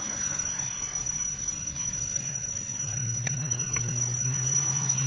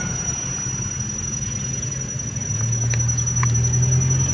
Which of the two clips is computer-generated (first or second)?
first